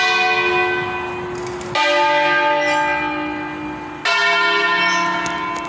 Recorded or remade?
recorded